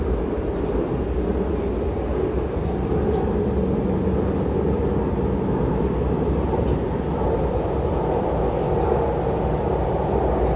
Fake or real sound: real